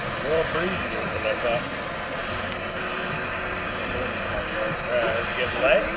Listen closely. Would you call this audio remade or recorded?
recorded